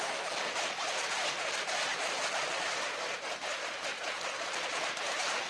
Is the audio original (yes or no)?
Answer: yes